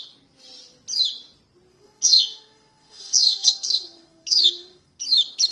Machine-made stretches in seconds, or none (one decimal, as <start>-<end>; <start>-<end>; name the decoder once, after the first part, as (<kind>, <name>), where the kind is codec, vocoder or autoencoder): 1.7-5.0 (codec, SNAC)